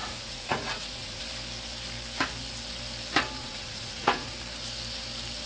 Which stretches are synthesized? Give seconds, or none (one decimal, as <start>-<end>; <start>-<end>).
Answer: 0.0-1.2; 3.4-4.3

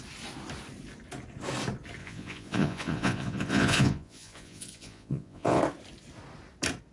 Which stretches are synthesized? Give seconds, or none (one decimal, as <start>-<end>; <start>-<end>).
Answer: 2.0-5.6